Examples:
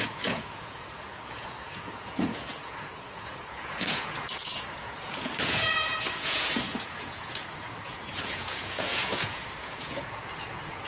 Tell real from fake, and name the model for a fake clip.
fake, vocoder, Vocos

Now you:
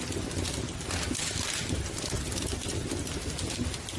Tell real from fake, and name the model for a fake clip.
real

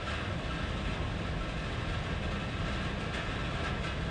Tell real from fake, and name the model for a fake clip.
real